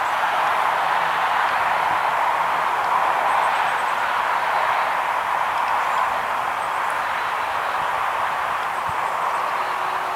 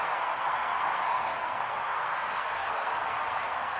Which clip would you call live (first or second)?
first